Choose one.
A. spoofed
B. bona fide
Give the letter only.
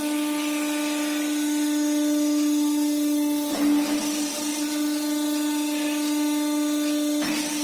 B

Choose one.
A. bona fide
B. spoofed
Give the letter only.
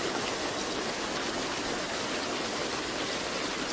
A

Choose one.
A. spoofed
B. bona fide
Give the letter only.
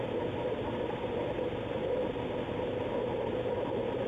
B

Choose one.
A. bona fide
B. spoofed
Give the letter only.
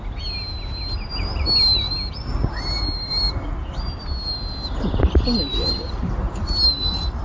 A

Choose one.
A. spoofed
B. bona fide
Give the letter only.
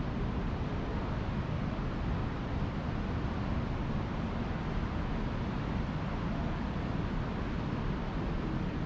B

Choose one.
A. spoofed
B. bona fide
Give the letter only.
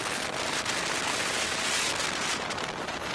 B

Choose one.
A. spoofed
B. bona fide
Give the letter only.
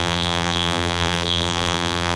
A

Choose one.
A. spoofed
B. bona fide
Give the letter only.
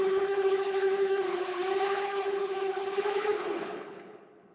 A